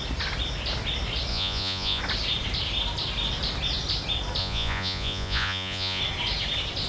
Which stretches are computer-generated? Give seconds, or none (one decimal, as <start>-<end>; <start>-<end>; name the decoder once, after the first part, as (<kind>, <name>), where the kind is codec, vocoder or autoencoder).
1.3-2.0 (vocoder, Vocos); 4.4-6.0